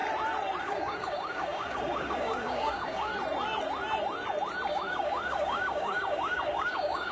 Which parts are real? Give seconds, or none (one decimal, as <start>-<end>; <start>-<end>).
0.0-0.6; 3.1-4.7